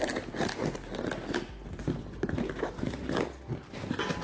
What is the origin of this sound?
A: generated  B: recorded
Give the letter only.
B